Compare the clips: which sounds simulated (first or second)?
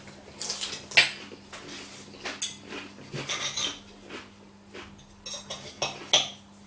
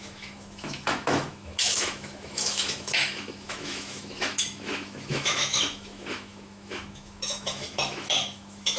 second